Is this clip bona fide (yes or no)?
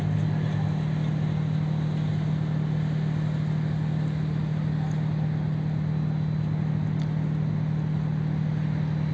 yes